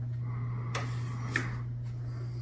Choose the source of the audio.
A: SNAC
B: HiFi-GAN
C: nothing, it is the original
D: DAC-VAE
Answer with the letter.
C